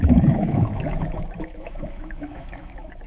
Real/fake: fake